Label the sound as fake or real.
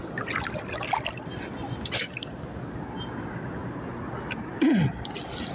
real